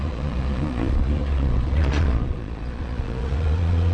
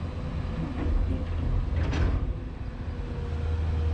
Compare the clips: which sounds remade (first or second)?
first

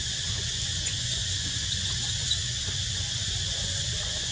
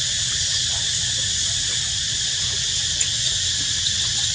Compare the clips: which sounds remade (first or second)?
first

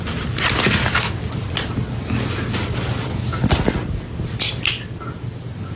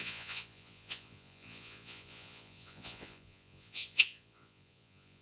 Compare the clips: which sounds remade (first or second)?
second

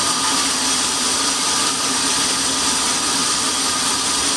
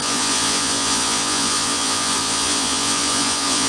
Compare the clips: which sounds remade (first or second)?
second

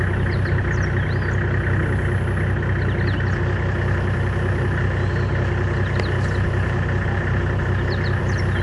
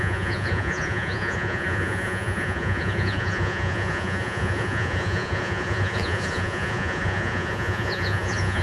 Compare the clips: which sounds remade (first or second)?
second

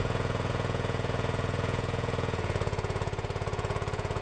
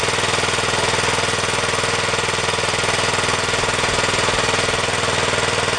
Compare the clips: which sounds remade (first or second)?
first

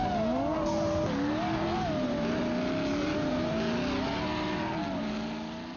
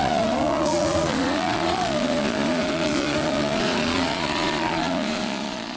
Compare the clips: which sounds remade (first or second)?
second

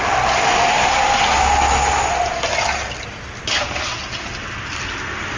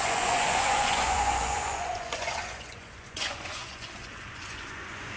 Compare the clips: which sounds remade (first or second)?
second